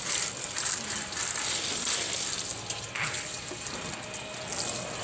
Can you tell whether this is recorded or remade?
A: recorded